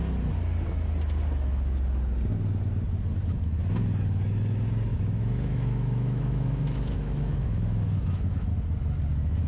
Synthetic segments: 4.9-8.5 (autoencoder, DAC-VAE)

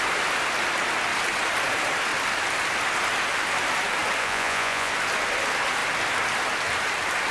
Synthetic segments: 4.2-4.9 (vocoder, Vocos)

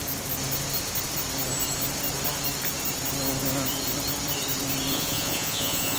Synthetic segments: 4.9-6.0 (vocoder, Vocos)

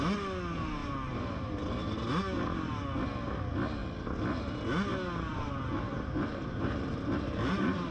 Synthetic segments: 0.8-1.6 (vocoder, BigVGAN v2); 5.3-7.9

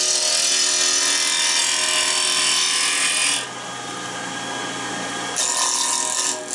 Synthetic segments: none

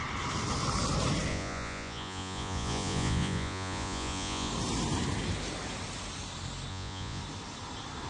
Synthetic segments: 1.3-4.5 (vocoder, Vocos); 6.7-7.2

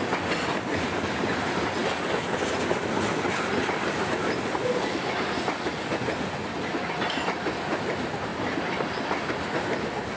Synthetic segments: none

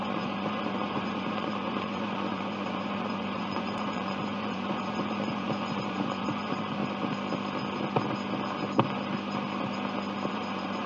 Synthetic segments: 0.0-6.8 (vocoder, Vocos); 10.3-10.9